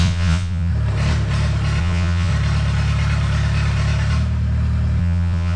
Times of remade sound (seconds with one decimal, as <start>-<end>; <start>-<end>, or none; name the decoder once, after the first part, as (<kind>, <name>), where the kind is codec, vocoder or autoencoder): 0.0-0.7 (vocoder, Vocos); 1.8-2.3; 5.0-5.6